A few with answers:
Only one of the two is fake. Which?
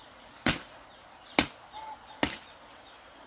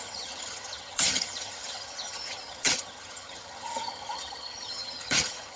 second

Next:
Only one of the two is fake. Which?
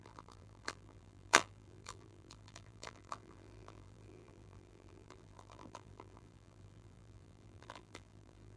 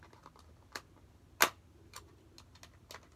first